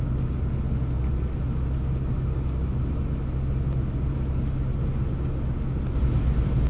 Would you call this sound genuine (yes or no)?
yes